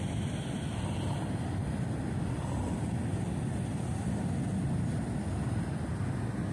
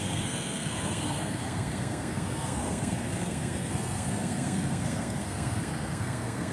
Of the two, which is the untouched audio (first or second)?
first